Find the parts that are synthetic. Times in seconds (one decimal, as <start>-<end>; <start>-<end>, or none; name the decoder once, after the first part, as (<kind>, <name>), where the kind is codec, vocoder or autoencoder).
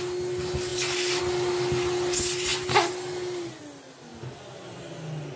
none